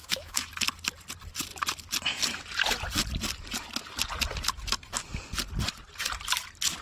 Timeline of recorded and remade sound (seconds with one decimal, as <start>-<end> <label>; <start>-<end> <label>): 0.0-0.5 remade; 0.5-6.8 recorded